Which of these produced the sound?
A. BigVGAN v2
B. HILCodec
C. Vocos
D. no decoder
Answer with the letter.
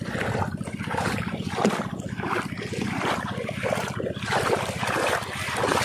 A